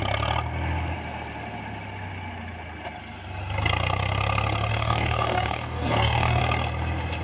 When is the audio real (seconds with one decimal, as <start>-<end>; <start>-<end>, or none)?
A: 0.0-4.7; 6.4-7.2